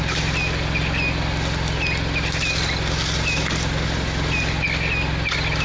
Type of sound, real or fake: real